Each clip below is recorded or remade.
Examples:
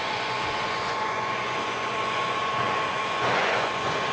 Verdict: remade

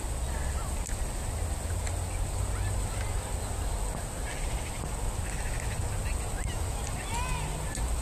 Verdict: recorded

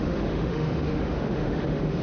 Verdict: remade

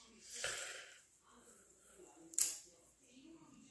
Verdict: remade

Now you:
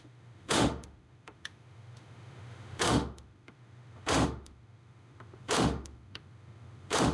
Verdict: remade